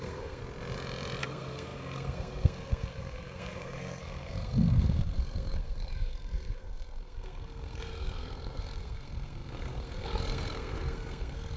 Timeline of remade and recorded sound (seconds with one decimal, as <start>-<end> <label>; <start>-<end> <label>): 0.0-0.4 remade; 0.4-1.2 recorded; 1.2-11.6 remade